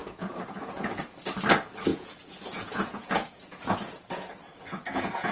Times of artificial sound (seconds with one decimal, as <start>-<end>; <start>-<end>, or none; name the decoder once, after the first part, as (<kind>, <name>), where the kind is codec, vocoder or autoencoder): 0.0-0.8 (vocoder, Vocos); 1.9-5.3